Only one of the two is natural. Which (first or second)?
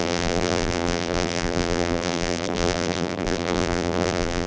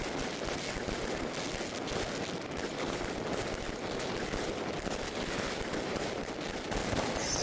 second